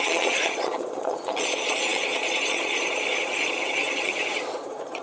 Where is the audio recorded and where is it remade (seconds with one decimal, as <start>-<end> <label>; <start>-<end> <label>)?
0.0-5.0 remade